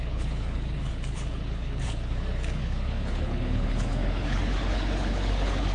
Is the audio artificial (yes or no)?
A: yes